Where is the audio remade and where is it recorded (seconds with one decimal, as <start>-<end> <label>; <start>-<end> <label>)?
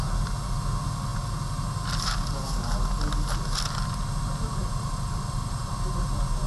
0.0-4.6 recorded; 4.6-5.7 remade; 5.7-6.5 recorded